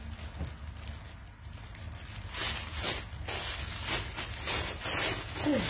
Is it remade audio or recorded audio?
recorded